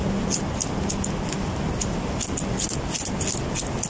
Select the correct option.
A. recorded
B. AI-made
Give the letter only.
A